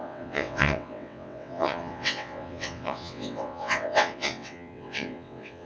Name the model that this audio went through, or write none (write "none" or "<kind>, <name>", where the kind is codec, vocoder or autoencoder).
vocoder, WaveNeXt